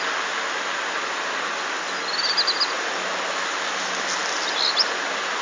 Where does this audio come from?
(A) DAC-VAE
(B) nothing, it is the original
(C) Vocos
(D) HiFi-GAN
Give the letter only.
B